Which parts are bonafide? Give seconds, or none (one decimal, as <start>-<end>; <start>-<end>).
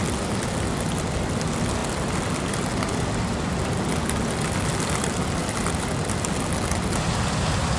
0.0-7.8